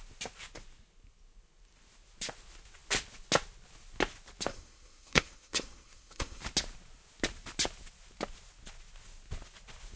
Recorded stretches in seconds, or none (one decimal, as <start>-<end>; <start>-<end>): 0.0-4.5; 6.4-10.0